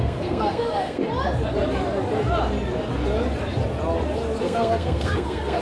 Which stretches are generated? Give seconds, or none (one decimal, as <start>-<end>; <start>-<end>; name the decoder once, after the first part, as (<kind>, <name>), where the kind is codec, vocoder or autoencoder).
0.0-1.0 (codec, SNAC); 4.4-5.6